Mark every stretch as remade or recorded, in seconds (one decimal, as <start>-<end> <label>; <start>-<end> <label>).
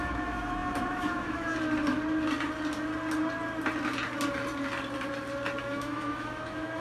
0.0-1.5 remade; 1.5-5.6 recorded; 5.6-6.8 remade